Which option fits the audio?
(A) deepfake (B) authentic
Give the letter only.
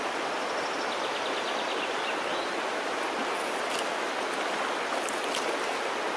B